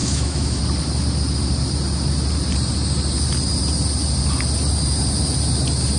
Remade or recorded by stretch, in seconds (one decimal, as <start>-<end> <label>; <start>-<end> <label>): 0.0-0.6 remade; 0.6-6.0 recorded